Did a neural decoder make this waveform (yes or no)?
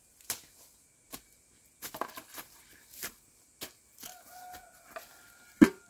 no